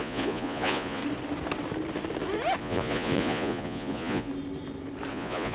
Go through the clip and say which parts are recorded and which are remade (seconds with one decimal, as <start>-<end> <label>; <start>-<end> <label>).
0.0-1.0 remade; 1.0-2.6 recorded; 2.6-4.3 remade; 4.3-5.1 recorded; 5.1-5.5 remade